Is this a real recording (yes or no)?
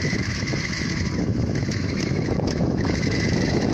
no